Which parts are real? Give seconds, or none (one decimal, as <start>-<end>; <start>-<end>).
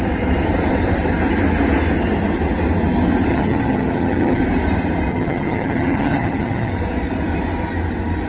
0.0-3.3; 4.4-5.1; 6.7-8.3